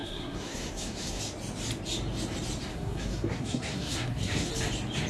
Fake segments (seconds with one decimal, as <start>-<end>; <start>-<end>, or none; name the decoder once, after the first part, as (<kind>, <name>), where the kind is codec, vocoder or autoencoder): 0.0-1.2 (codec, SNAC); 2.7-4.5